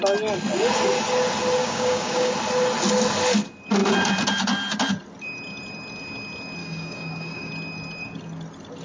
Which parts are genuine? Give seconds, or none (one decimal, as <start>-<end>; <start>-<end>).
0.0-1.6; 2.3-6.6; 7.5-8.8